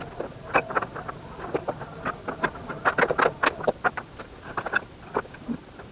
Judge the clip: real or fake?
real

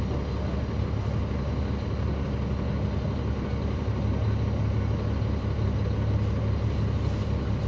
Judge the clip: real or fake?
real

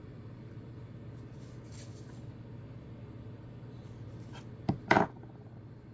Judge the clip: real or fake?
real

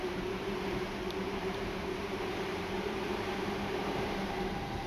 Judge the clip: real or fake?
fake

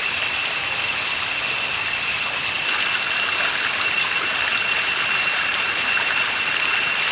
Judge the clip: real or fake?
fake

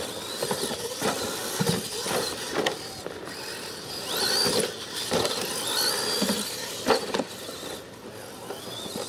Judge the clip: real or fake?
real